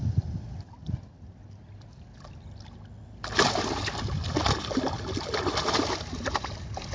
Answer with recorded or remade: recorded